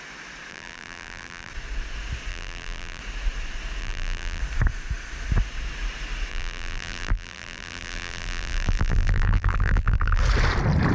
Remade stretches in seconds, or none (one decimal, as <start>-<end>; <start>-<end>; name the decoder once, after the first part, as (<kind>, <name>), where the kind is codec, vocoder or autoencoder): 0.5-1.5 (vocoder, BigVGAN v2); 2.3-3.0; 3.8-4.4; 6.3-10.2

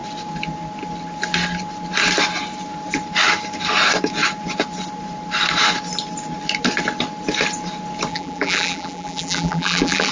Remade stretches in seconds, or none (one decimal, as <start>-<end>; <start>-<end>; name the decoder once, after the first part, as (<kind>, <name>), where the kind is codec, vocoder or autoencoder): 8.1-10.1 (vocoder, BigVGAN v2)

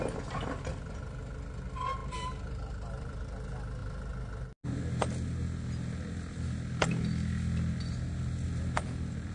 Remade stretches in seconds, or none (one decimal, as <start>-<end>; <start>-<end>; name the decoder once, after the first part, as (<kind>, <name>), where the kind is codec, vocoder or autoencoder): 2.0-3.2 (vocoder, BigVGAN v2)

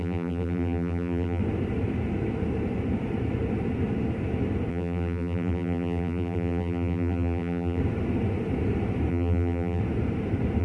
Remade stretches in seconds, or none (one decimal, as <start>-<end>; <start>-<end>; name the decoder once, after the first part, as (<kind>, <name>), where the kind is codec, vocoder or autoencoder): 0.0-1.4 (vocoder, BigVGAN v2); 4.7-7.8; 9.1-9.8

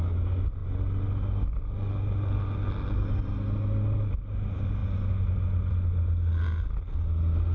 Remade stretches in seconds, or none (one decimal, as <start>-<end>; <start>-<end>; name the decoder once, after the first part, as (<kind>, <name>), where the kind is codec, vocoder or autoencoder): none

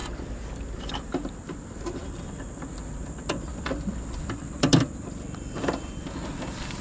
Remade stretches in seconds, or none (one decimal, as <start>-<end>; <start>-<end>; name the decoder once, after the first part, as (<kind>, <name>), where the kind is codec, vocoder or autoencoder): 2.0-6.1 (vocoder, BigVGAN v2)

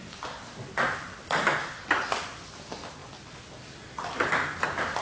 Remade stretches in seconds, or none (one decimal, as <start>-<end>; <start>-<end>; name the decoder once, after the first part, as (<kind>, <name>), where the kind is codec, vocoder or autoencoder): none